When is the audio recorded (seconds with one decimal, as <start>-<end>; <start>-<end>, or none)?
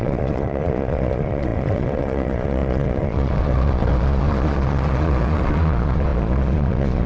none